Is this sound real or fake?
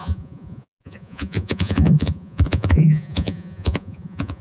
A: fake